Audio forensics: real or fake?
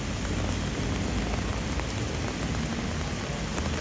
real